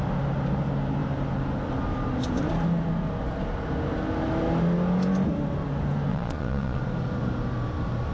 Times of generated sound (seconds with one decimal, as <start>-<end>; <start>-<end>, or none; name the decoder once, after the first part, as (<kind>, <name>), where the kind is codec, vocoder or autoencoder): 6.1-6.8 (vocoder, Vocos)